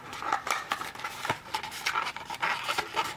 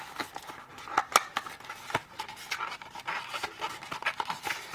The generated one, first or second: first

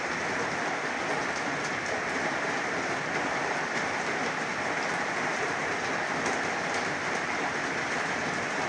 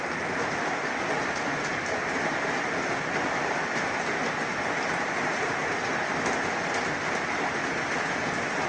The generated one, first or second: first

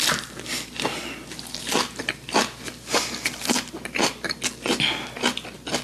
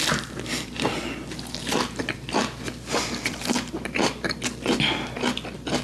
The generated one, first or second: second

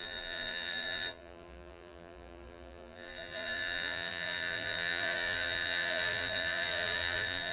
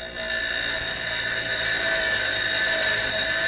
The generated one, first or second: first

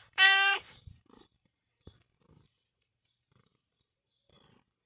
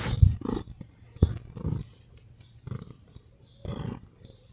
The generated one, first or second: first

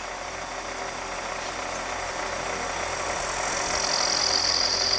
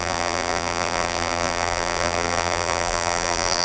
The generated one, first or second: second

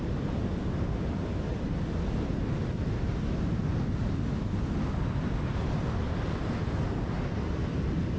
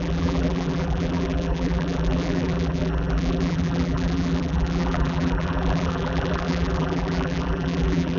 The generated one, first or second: second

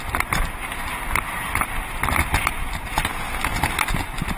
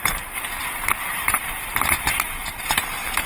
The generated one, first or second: second